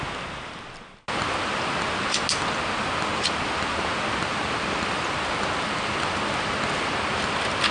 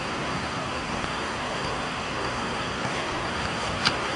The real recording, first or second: first